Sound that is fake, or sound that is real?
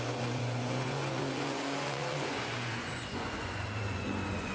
fake